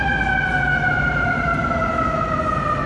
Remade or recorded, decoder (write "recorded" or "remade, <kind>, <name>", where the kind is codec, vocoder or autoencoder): recorded